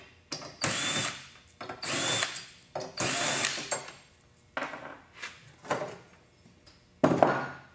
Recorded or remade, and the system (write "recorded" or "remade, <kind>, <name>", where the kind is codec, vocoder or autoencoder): recorded